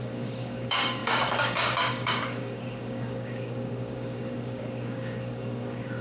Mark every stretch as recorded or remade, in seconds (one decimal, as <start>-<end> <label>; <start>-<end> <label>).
0.0-6.0 remade